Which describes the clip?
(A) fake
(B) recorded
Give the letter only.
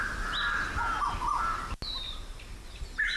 B